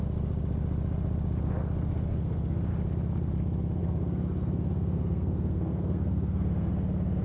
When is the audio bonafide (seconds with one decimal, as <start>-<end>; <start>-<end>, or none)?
0.0-2.1; 2.7-3.8; 6.7-7.2